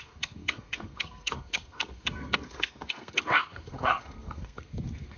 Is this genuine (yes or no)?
no